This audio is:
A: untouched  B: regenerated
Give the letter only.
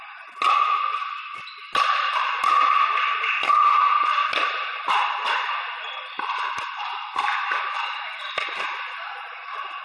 A